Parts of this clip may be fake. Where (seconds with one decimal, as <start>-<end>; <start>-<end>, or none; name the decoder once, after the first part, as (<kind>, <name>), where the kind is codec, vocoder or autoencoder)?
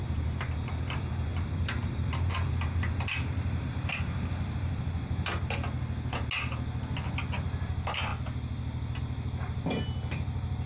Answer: 1.3-2.1 (vocoder, BigVGAN v2)